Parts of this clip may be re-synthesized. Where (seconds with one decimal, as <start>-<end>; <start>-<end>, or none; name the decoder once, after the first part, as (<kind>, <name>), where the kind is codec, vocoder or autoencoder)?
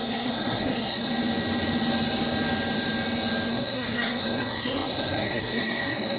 0.0-1.1 (codec, SNAC); 3.5-6.2